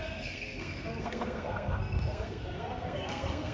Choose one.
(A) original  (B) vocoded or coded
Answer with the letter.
B